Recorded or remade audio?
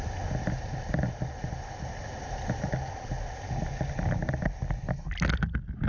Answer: recorded